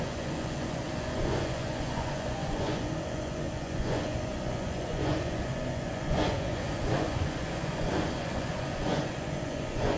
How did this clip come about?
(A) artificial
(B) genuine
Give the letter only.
A